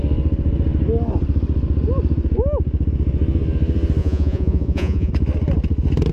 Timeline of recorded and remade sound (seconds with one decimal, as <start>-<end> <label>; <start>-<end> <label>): 0.0-4.0 recorded; 4.0-5.1 remade; 5.1-6.1 recorded